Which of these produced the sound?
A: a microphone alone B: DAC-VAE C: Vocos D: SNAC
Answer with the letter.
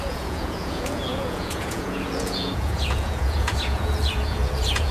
C